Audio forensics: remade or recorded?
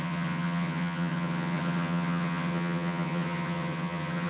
remade